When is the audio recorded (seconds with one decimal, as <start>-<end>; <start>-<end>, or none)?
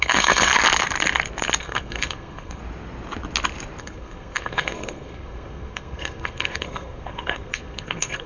0.5-1.6; 2.6-3.8